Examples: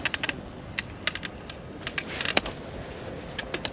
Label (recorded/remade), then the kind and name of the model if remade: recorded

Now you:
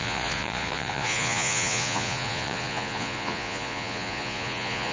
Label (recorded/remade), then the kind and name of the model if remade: remade, vocoder, Vocos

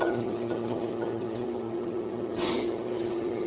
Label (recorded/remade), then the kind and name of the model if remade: remade, vocoder, HiFi-GAN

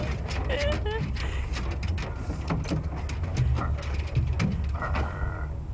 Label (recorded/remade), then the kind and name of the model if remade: recorded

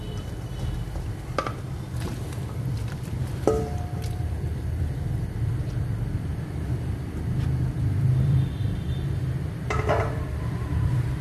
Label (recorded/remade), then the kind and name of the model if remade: remade, vocoder, BigVGAN v2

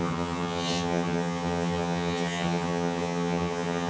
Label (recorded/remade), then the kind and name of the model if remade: remade, vocoder, HiFi-GAN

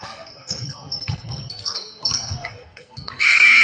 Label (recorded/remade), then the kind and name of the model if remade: remade, codec, SNAC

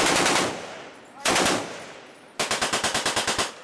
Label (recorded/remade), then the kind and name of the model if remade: recorded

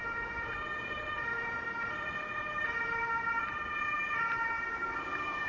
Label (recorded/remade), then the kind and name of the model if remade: remade, vocoder, BigVGAN v2